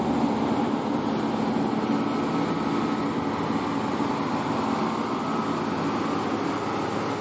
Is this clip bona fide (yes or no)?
yes